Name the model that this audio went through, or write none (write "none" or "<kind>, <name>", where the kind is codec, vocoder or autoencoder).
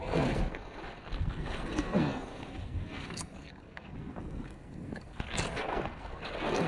codec, SNAC